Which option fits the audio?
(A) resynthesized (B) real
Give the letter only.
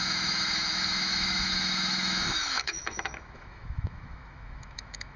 A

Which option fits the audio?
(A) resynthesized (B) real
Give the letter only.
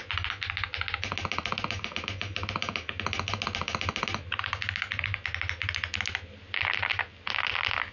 B